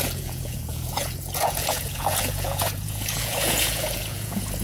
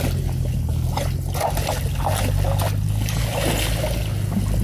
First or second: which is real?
second